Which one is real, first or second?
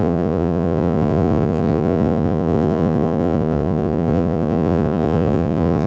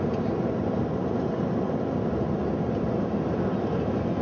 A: second